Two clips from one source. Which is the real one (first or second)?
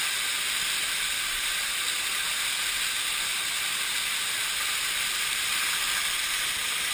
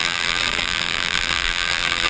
first